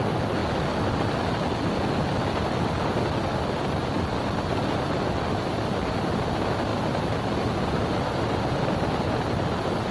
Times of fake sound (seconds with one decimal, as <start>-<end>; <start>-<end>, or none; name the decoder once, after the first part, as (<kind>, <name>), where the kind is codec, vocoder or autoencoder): none